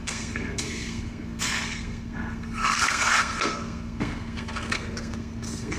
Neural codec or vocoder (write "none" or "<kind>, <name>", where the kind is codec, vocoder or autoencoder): codec, SNAC